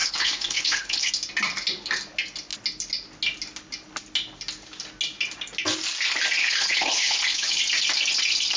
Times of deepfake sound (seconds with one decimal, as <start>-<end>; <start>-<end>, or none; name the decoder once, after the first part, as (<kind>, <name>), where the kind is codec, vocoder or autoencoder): 0.0-1.1 (codec, HILCodec); 6.4-7.6